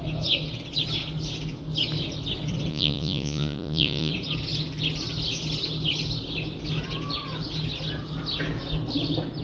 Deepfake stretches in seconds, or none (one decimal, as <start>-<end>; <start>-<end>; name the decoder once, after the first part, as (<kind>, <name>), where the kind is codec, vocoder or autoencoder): 2.7-4.1 (vocoder, Vocos)